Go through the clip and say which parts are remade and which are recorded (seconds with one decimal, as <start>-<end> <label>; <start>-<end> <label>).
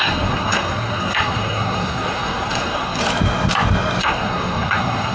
0.0-3.0 remade; 3.0-4.0 recorded; 4.0-5.1 remade